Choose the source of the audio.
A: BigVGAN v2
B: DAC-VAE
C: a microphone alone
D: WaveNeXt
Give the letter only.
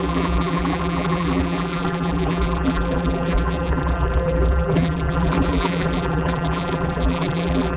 A